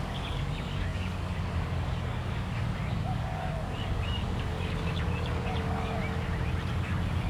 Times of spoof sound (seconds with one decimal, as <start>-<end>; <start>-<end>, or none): 0.0-6.0; 6.7-7.3